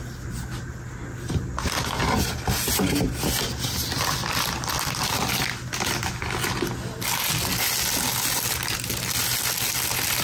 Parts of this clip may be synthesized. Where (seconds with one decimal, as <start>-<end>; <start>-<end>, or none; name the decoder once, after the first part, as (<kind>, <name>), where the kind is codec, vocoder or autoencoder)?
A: none